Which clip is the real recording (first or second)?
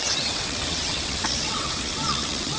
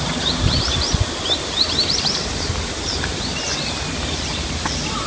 second